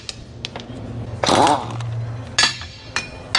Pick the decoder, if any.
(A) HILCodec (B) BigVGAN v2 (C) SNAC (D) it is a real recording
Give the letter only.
D